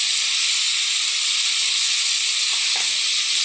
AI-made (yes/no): no